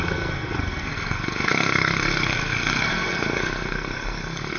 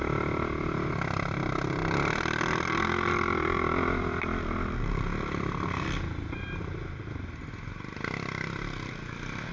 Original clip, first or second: second